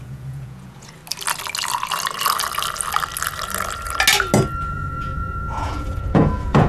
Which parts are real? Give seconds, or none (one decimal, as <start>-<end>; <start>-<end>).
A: 1.0-4.7